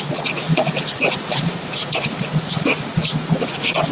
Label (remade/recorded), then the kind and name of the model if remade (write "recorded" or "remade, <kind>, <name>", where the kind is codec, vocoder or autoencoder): remade, vocoder, Vocos